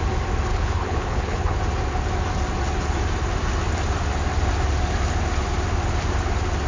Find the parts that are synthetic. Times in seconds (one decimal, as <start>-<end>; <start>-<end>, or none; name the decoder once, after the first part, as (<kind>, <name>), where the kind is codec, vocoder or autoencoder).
0.5-1.6 (codec, HILCodec)